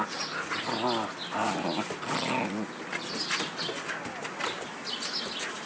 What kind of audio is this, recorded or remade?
recorded